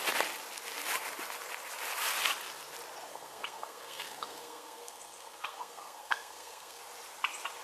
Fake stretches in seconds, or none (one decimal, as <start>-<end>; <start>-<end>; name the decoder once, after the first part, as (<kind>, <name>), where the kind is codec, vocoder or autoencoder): 3.1-6.8 (codec, SNAC)